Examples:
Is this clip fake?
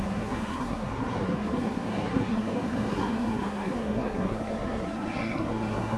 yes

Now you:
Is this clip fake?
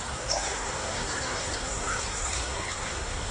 yes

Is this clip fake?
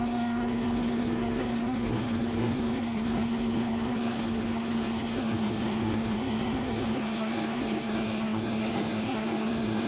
yes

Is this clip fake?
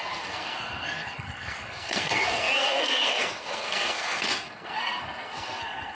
yes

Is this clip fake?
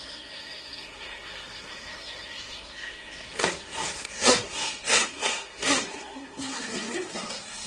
yes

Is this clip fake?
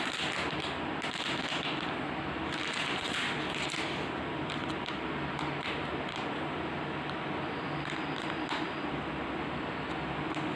no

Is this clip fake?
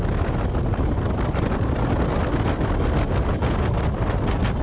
no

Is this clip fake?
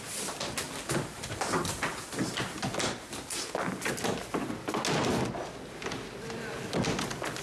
no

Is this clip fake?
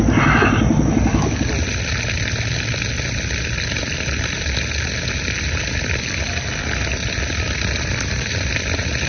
no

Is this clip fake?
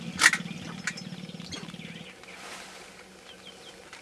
no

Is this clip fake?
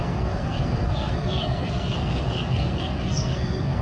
yes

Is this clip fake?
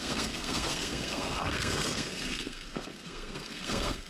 yes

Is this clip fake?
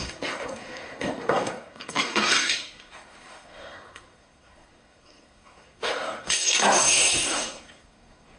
yes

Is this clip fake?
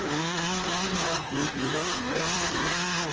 yes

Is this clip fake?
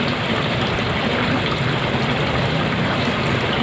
no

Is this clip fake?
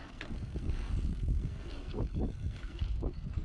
yes